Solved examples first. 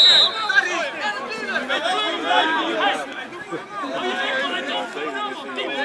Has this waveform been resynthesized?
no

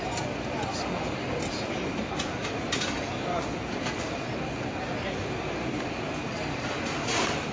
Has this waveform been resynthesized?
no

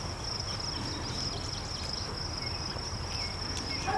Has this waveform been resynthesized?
no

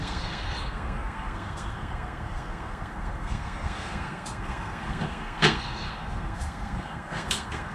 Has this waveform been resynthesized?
yes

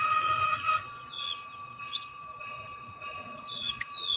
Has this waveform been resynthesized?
yes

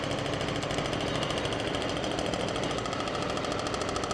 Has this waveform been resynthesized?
no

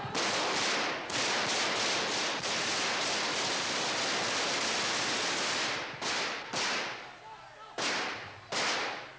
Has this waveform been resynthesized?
no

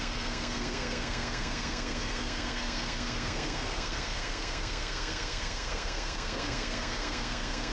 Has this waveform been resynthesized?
yes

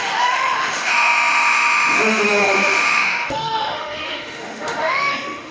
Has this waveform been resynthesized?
yes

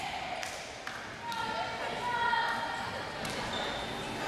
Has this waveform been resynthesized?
no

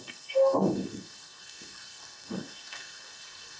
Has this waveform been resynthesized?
yes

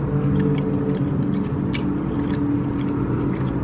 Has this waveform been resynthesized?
no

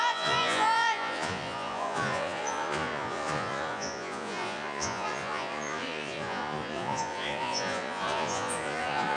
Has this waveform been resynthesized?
yes